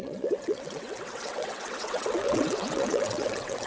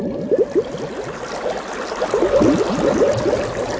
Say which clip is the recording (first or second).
second